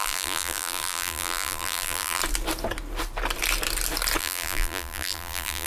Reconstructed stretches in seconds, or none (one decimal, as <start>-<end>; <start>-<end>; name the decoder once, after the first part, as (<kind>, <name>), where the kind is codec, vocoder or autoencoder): 0.0-2.2 (vocoder, BigVGAN v2); 4.2-5.7